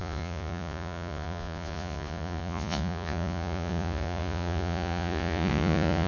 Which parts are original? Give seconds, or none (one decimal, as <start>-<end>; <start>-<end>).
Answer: none